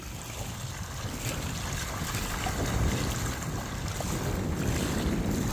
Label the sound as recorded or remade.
recorded